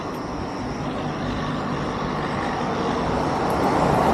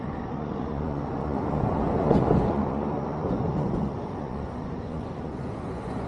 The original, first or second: first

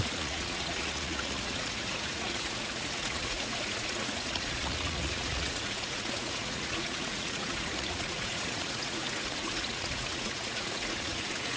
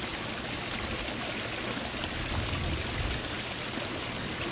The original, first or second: second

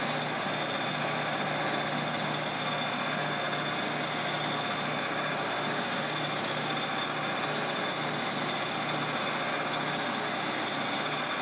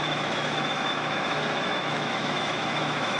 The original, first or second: first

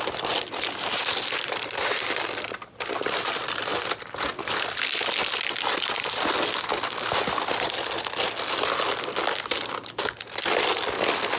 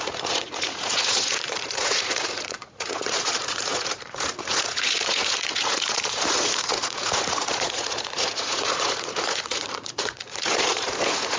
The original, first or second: first